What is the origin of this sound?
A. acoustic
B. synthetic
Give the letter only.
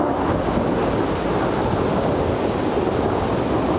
A